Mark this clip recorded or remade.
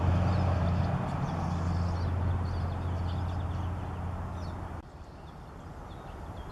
recorded